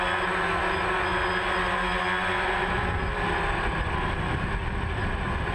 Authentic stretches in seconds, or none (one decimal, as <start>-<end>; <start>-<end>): 0.0-5.5